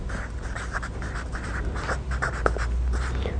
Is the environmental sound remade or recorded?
remade